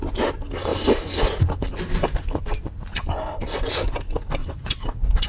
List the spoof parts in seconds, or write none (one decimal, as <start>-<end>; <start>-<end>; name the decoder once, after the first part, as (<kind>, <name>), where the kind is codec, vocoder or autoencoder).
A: 4.4-5.3 (vocoder, WaveNeXt)